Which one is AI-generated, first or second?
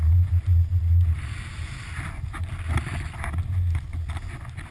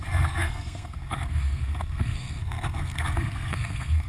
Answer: second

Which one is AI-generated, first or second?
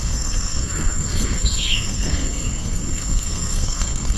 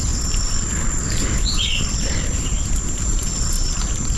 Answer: first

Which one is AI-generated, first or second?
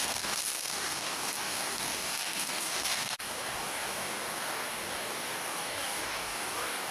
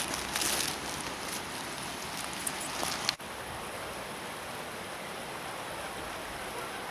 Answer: first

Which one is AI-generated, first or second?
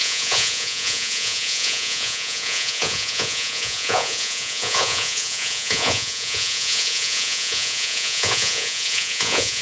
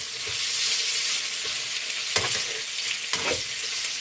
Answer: first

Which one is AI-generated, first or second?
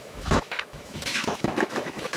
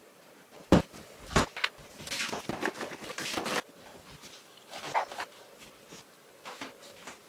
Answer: first